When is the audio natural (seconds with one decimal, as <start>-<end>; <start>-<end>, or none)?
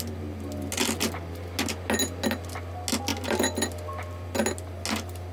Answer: 0.0-5.3